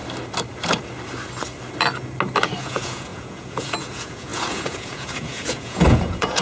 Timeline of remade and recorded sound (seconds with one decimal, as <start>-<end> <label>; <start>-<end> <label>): 0.0-2.6 recorded; 2.6-6.4 remade